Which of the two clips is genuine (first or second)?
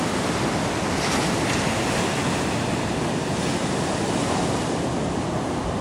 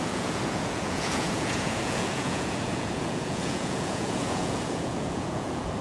first